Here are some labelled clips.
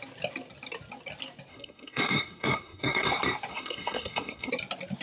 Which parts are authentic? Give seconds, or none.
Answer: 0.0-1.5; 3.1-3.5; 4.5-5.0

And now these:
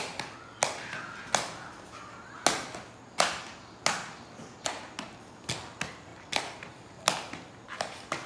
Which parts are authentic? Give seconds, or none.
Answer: 0.0-6.1; 7.0-8.3